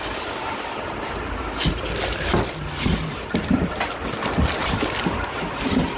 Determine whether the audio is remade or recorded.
recorded